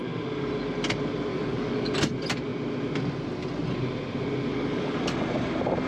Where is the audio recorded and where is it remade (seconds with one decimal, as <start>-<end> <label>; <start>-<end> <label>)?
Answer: 0.0-1.3 recorded; 1.3-1.9 remade; 1.9-4.5 recorded; 4.5-5.0 remade; 5.0-5.9 recorded